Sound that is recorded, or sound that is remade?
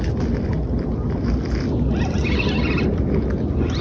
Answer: recorded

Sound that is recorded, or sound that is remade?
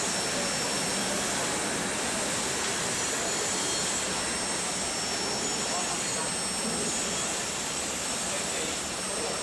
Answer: recorded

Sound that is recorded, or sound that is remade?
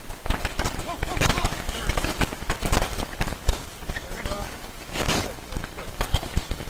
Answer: remade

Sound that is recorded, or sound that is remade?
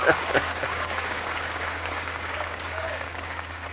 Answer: remade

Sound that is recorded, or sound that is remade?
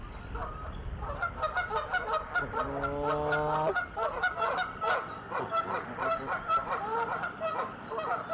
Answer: recorded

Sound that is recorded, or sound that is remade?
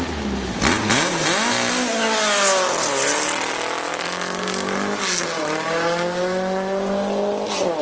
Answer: recorded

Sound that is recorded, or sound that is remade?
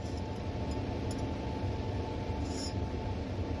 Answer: recorded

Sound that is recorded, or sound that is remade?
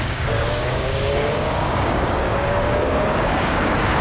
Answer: remade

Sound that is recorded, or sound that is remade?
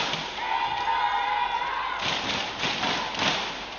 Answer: recorded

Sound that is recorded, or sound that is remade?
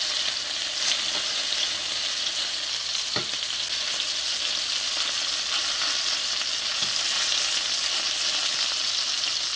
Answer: recorded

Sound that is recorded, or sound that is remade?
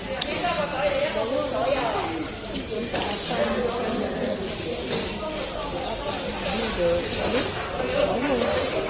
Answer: recorded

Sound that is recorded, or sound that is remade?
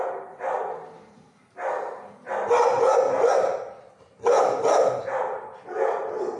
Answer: recorded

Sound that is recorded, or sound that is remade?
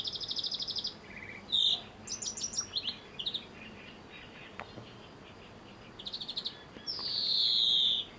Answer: recorded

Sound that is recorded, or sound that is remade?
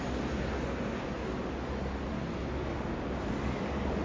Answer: recorded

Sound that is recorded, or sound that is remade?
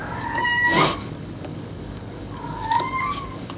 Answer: remade